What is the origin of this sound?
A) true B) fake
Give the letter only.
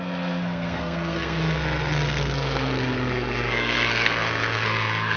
B